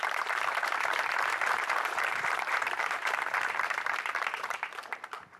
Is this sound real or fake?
fake